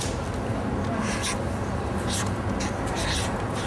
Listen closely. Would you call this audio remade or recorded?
recorded